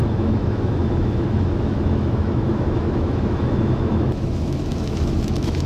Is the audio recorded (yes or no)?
no